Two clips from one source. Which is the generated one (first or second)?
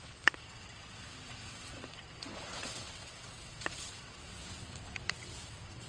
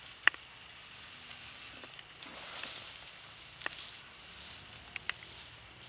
first